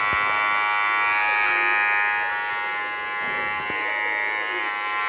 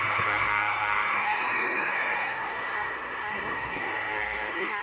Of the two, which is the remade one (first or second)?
second